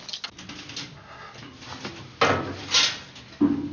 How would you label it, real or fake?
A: real